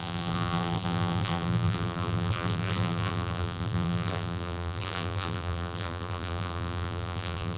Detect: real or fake fake